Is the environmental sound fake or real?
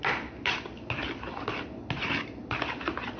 real